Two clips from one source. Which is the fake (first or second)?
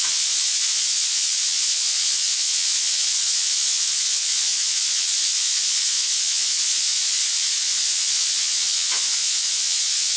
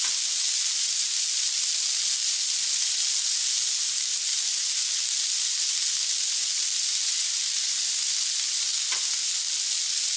first